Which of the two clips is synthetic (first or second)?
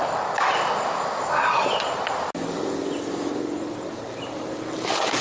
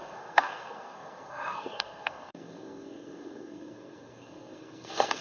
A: second